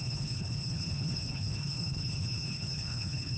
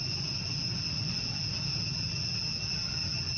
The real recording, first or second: second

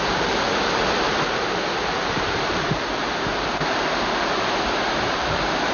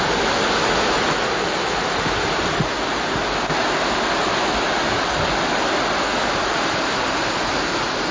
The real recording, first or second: second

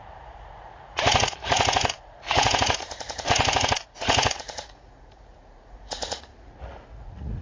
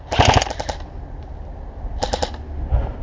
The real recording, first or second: second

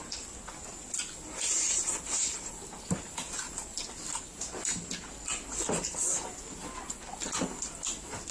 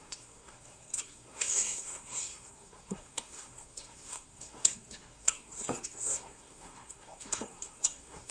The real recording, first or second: first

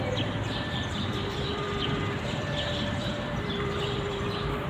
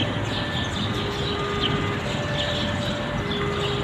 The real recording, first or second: second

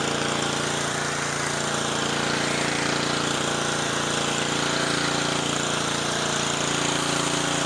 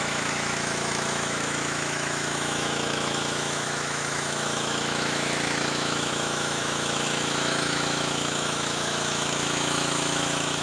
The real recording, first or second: first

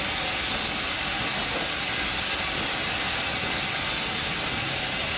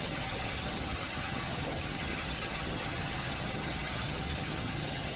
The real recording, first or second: first